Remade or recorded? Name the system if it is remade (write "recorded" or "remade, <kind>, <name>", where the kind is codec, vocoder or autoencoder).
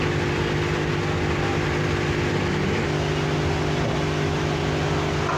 recorded